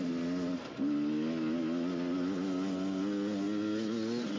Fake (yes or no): no